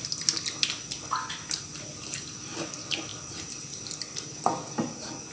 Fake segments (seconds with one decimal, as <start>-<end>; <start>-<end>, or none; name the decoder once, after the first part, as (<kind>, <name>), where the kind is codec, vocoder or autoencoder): none

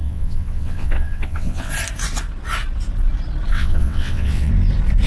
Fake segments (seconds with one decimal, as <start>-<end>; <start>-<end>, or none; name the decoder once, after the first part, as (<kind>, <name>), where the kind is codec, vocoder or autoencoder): 0.0-1.7 (vocoder, WaveNeXt); 3.5-4.5

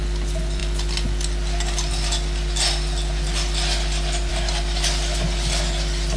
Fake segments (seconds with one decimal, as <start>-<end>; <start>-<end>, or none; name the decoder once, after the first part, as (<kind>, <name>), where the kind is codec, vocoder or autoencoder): none